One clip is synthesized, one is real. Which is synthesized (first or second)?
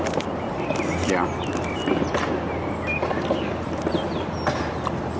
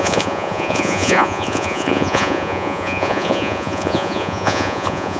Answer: second